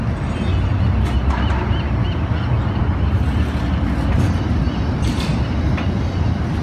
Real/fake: real